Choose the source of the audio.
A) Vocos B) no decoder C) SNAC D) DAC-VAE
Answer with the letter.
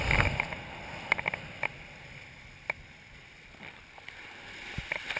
B